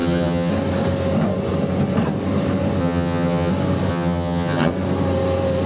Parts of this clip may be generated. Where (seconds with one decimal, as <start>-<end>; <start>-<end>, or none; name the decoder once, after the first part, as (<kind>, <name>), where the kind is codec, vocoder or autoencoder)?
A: 0.0-0.5 (vocoder, HiFi-GAN); 2.8-3.5; 3.9-4.7